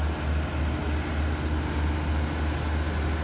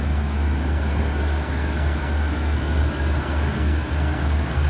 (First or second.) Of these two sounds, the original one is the first